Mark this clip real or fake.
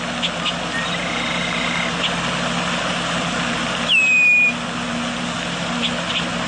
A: real